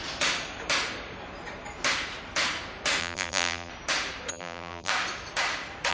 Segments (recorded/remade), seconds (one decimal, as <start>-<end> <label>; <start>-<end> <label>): 0.0-3.0 recorded; 3.0-3.7 remade; 3.7-4.3 recorded; 4.3-4.9 remade; 4.9-5.9 recorded